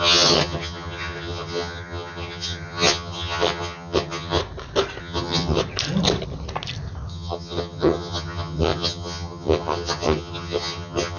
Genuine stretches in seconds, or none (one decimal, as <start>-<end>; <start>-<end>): 4.4-5.0; 5.6-7.1